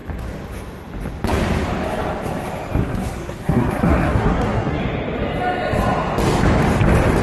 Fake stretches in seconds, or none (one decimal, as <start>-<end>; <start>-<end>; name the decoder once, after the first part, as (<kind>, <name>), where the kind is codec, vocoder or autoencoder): 2.8-4.8 (codec, SNAC)